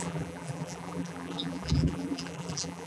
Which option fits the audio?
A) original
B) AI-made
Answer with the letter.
B